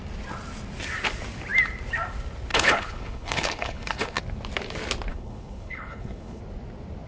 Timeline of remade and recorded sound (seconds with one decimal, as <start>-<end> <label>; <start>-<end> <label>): 0.0-2.5 recorded; 2.5-4.2 remade; 4.2-5.1 recorded; 5.1-6.4 remade; 6.4-7.1 recorded